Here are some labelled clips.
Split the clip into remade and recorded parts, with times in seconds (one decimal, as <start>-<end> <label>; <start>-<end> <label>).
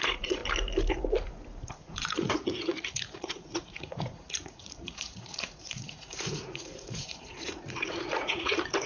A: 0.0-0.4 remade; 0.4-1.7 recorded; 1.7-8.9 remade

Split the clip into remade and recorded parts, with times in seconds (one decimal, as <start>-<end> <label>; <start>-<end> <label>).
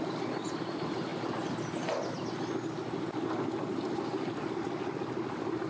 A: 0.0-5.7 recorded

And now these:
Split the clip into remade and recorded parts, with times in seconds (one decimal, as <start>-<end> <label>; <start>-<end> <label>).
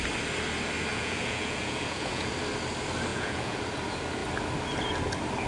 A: 0.0-0.9 recorded; 0.9-2.3 remade; 2.3-3.1 recorded; 3.1-3.6 remade; 3.6-5.5 recorded